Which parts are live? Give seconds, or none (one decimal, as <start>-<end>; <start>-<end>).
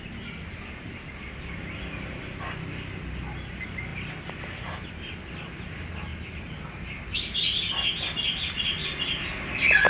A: 0.0-9.9